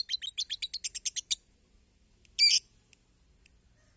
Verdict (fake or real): real